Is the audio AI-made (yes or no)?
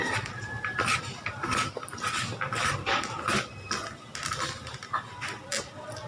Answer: no